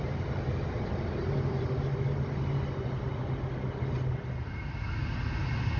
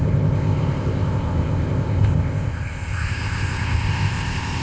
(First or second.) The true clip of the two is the first